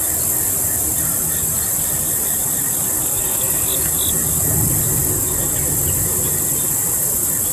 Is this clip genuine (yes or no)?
yes